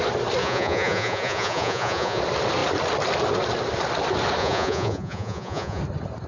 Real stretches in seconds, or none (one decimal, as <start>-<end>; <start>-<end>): 0.0-0.4; 2.2-4.4; 5.8-6.3